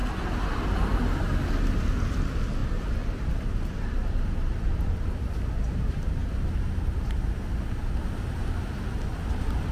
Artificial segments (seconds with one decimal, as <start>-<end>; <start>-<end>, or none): 2.6-5.3